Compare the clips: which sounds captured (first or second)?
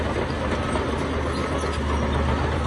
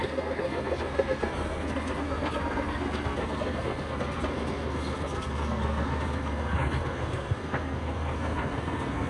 first